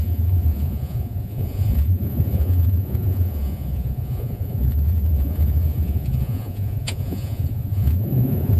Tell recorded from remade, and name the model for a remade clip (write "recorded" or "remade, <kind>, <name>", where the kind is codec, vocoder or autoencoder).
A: remade, vocoder, Vocos